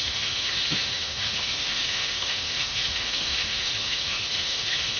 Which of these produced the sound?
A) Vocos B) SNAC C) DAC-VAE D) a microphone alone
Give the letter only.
C